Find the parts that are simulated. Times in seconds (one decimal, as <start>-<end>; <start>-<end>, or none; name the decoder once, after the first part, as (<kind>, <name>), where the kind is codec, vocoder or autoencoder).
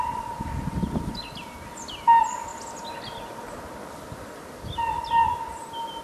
none